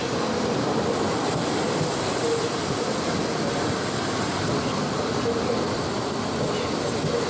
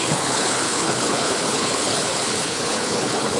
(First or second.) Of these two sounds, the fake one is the second